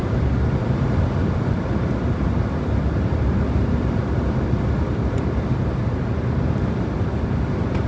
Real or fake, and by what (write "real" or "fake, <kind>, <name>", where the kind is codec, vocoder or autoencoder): fake, vocoder, BigVGAN v2